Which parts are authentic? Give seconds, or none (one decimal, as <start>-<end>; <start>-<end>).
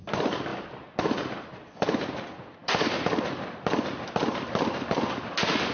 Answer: 0.0-5.7